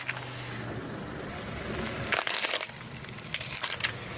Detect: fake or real real